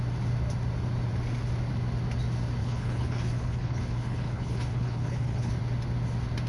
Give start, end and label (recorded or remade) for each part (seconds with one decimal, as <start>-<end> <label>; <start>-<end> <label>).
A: 0.0-2.6 recorded; 2.6-5.5 remade; 5.5-6.5 recorded